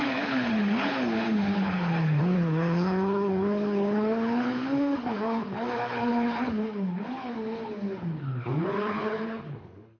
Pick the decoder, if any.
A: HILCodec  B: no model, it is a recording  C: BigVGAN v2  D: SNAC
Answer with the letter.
A